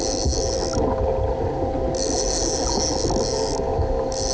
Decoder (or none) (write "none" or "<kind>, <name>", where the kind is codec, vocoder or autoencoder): none